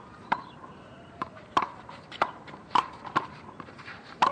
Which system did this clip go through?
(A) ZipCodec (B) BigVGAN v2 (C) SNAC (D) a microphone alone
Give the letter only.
B